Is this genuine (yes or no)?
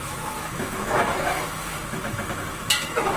no